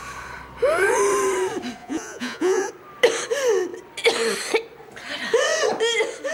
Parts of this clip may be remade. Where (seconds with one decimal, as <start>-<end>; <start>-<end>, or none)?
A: 1.8-2.7